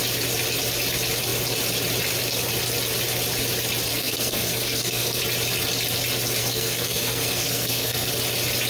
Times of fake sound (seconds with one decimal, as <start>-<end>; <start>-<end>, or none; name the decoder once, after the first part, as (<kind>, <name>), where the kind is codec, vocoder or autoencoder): 3.9-5.2 (codec, SNAC); 6.4-8.1